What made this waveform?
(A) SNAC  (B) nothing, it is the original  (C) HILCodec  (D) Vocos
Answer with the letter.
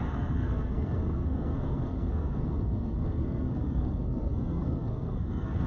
A